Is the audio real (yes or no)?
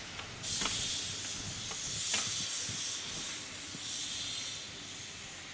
yes